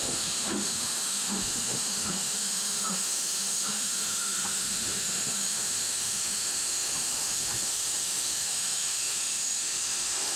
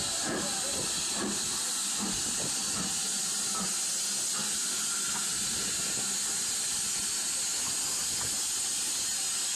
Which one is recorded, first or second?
second